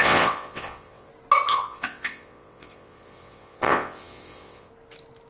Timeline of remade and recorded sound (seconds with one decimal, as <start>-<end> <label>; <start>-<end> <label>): 0.0-1.1 remade; 1.1-1.5 recorded; 1.5-4.7 remade; 4.7-5.3 recorded